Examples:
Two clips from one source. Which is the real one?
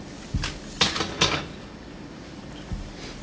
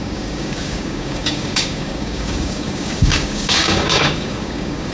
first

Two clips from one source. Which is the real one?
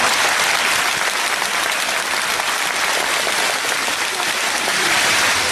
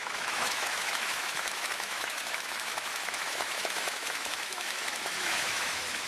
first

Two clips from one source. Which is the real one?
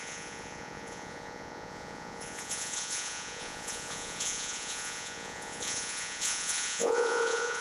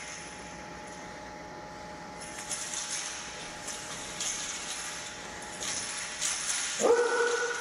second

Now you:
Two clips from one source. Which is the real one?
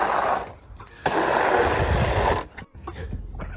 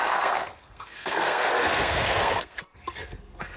first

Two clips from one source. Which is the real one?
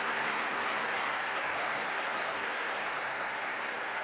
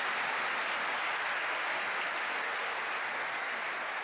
second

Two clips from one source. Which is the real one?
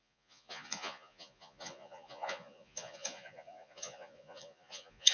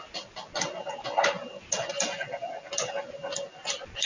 second